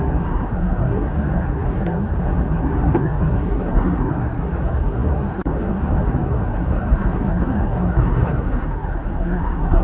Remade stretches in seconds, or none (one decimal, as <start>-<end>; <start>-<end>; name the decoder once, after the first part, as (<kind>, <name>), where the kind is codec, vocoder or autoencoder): 0.0-9.8 (codec, SNAC)